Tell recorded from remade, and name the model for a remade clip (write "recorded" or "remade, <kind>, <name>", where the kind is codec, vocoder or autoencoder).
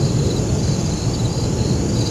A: recorded